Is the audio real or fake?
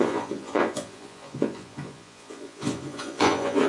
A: fake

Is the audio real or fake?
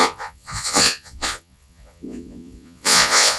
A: fake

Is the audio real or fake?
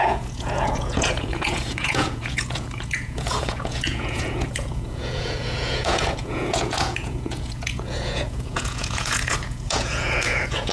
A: fake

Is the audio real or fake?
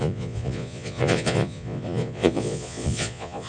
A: fake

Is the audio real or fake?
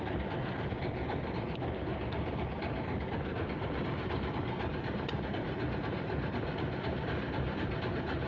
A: real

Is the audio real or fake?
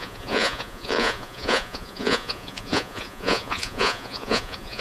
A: fake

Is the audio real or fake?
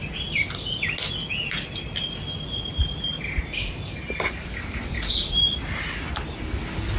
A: real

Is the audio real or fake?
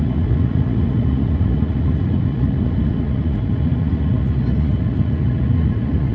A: fake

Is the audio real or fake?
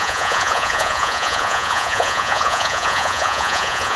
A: fake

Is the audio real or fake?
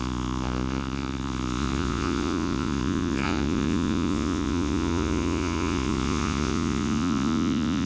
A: fake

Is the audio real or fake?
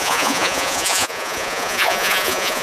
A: fake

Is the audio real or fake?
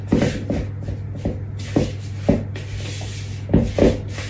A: real